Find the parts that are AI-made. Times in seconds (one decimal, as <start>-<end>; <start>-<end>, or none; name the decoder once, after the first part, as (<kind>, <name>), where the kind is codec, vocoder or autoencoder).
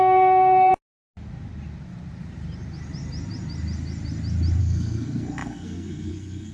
0.0-0.7 (codec, SNAC); 4.6-6.5